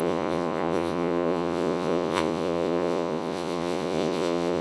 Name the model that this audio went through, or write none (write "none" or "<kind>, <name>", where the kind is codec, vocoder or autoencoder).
vocoder, Vocos